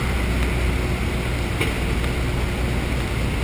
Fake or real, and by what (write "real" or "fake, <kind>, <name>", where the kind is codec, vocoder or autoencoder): real